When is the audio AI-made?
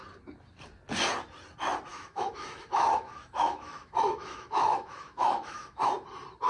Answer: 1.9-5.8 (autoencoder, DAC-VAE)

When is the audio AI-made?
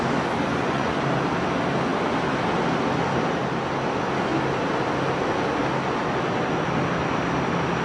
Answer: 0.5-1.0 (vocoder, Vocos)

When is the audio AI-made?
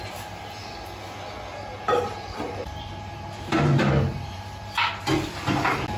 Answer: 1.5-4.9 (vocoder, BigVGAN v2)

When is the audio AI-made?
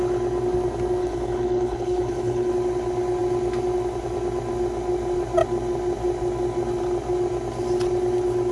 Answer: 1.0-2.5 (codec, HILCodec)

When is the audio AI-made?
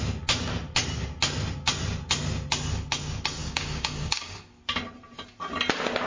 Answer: 3.4-4.6 (codec, DAC)